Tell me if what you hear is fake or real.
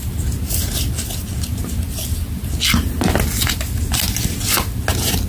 real